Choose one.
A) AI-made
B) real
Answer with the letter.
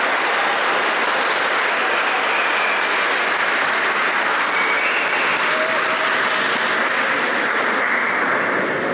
B